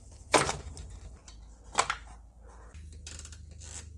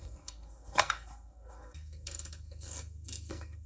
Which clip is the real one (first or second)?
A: first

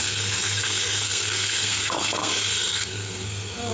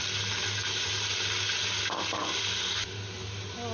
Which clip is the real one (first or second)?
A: second